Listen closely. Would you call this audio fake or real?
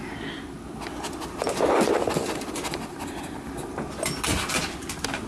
real